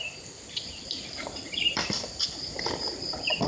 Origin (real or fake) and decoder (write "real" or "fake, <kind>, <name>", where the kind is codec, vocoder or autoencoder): fake, vocoder, BigVGAN v2